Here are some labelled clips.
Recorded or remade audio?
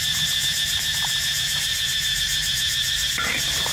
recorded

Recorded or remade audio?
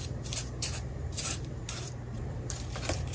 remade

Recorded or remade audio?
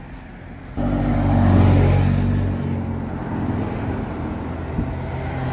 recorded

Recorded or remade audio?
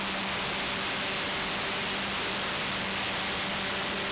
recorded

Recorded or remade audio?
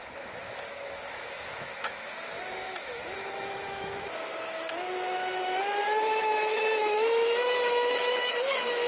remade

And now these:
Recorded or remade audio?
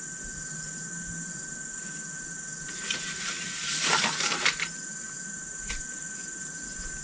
recorded